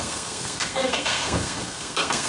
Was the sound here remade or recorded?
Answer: remade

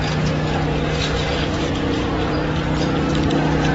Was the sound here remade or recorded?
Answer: recorded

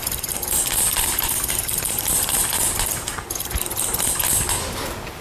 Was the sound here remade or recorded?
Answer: recorded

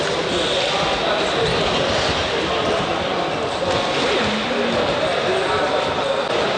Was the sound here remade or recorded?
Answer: recorded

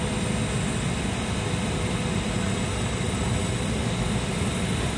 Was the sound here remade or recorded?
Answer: recorded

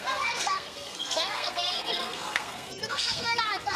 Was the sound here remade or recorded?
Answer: remade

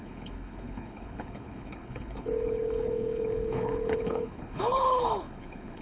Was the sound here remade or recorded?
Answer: remade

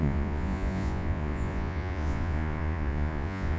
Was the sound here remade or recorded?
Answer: remade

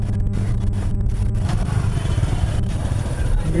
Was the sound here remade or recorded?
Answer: remade